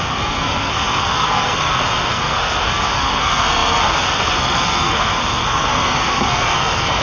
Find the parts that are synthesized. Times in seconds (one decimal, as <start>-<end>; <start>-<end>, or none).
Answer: 0.0-7.0